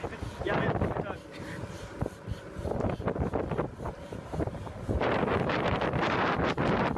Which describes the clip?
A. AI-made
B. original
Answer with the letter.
A